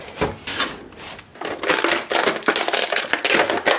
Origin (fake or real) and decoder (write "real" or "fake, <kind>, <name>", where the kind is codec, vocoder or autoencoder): real